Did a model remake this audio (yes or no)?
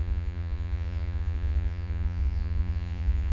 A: yes